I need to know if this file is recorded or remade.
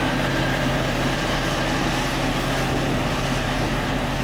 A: recorded